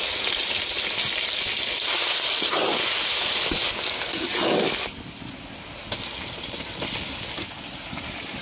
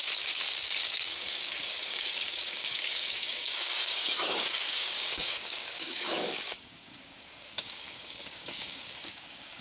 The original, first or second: first